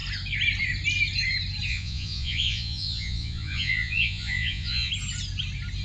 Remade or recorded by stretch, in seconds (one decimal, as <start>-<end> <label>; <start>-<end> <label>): 0.0-1.7 recorded; 1.7-4.9 remade; 4.9-5.8 recorded